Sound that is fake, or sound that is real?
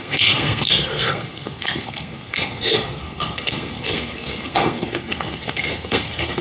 fake